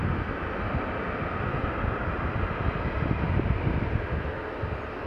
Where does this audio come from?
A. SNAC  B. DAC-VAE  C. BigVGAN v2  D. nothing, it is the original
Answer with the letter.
D